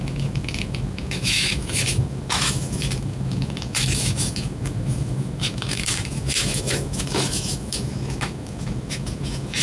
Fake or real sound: fake